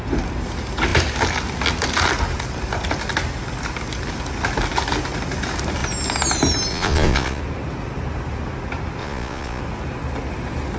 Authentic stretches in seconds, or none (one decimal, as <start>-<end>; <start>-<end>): 0.0-6.7; 7.4-9.0; 9.6-10.8